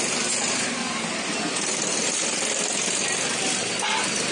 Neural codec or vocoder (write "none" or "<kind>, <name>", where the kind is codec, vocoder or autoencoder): none